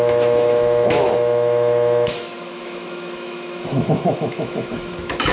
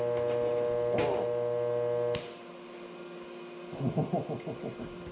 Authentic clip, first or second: second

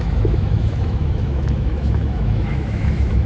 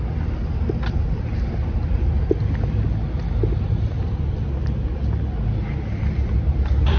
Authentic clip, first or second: second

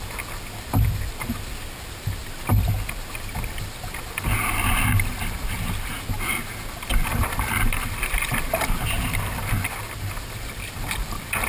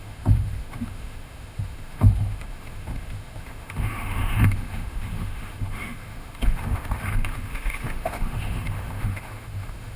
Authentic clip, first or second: first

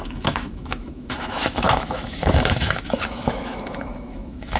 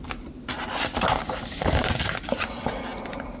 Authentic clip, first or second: second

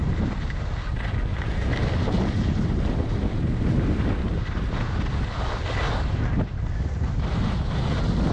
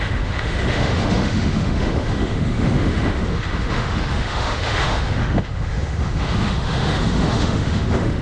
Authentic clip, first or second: first